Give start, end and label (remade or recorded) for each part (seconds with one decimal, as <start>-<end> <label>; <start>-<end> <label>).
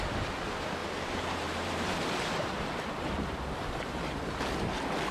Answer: 0.0-0.8 recorded; 0.8-2.5 remade; 2.5-5.1 recorded